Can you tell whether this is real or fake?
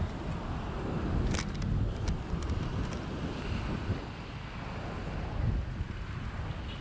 real